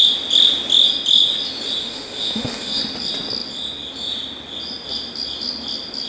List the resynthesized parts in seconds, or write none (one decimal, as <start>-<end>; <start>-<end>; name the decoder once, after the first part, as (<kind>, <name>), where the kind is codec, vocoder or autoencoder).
1.8-2.8 (autoencoder, DAC-VAE)